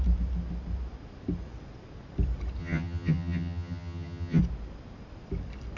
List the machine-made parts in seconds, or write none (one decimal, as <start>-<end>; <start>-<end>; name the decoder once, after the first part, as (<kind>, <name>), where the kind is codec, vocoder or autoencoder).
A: 2.6-4.4 (vocoder, HiFi-GAN)